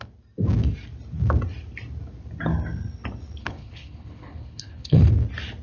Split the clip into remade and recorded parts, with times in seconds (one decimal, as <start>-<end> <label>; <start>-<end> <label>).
0.0-3.4 recorded; 3.4-5.1 remade; 5.1-5.6 recorded